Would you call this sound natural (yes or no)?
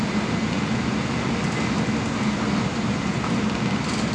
yes